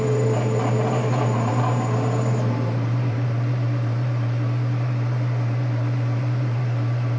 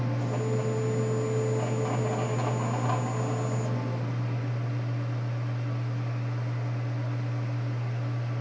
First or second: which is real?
second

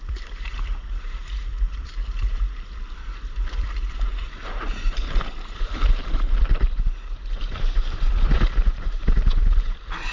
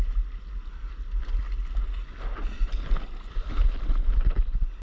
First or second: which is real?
second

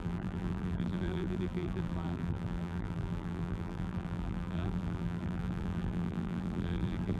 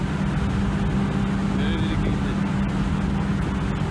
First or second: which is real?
second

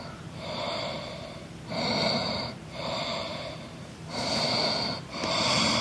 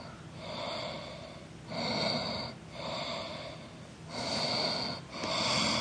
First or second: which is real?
second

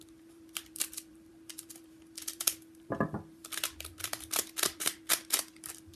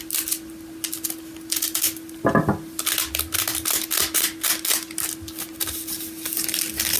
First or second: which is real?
second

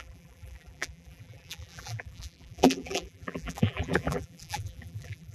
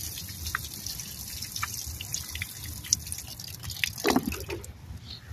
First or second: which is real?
second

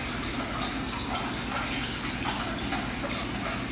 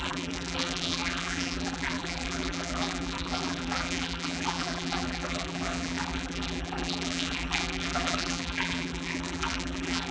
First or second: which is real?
first